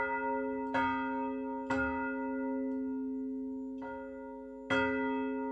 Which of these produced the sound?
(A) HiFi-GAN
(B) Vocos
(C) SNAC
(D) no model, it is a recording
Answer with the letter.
D